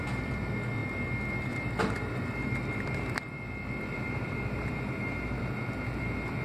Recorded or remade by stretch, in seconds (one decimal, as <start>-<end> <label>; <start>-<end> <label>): 0.0-0.8 remade; 0.8-1.3 recorded; 1.3-6.4 remade